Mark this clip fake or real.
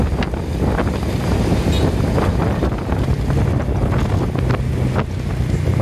real